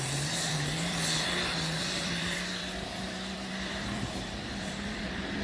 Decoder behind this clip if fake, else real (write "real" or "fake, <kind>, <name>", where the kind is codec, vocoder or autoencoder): fake, vocoder, BigVGAN v2